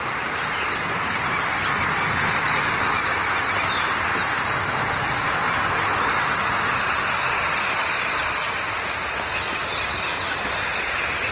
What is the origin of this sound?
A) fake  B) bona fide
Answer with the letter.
B